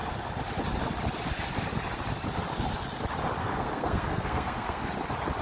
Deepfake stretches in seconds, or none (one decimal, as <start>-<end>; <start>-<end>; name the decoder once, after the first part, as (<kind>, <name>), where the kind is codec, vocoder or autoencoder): 3.4-4.9 (codec, SNAC)